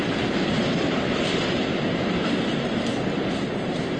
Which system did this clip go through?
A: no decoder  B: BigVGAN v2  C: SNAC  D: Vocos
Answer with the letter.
B